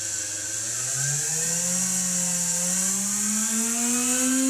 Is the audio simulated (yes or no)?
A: no